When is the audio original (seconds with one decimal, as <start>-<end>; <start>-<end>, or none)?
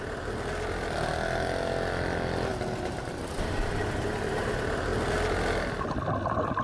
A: 0.0-6.6